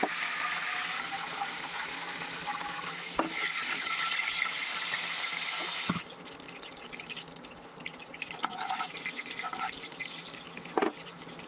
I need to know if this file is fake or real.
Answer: real